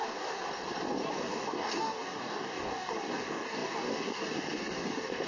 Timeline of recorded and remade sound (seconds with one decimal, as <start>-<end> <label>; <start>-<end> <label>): 0.0-0.4 remade; 0.4-1.1 recorded; 1.1-5.3 remade